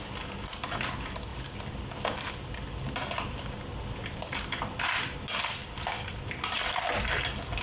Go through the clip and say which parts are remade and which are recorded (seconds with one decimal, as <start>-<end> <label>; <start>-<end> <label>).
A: 0.0-7.6 recorded